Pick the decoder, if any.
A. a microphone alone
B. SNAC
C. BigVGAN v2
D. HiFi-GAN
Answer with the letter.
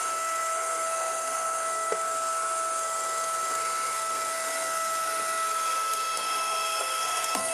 B